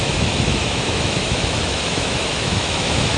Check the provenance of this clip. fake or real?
fake